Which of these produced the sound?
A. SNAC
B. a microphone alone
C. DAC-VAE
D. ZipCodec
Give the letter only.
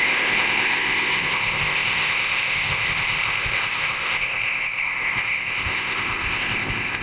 D